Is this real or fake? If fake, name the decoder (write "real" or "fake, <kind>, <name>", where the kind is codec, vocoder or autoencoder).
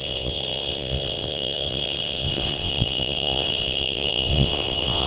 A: fake, vocoder, WaveNeXt